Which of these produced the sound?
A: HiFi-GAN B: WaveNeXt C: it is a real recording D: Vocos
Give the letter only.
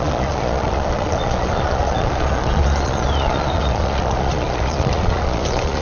D